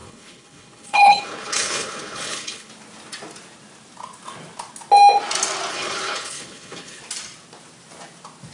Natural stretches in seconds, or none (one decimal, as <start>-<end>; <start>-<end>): 2.7-5.7; 7.0-8.5